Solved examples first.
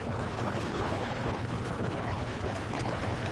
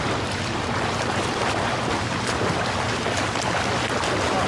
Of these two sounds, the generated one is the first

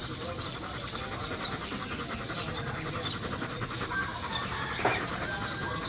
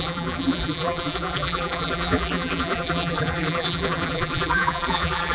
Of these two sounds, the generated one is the second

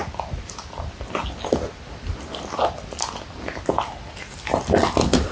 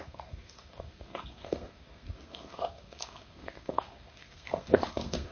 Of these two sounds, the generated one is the second